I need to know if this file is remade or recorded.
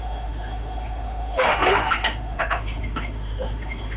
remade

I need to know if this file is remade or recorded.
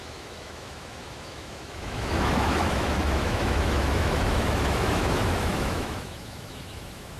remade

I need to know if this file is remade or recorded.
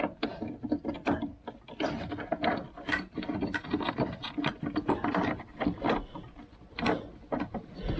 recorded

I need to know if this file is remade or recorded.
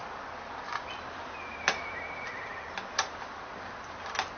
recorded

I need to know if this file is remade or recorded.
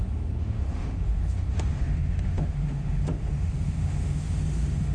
remade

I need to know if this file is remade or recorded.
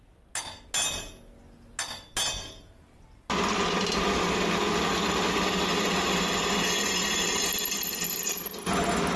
recorded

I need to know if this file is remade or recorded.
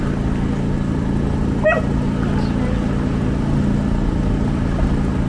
recorded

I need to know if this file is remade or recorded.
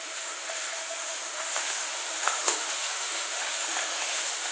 remade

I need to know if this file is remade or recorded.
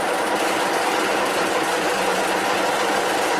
recorded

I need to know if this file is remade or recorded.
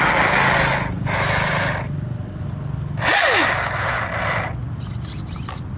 recorded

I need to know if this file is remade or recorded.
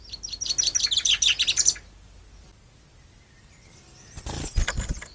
recorded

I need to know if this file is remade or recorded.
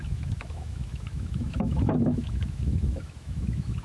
remade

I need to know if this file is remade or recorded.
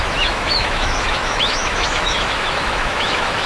remade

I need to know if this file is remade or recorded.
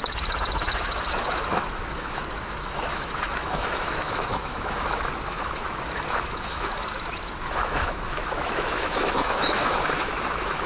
remade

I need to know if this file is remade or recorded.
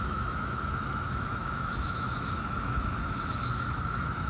remade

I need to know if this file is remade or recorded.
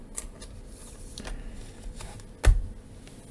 recorded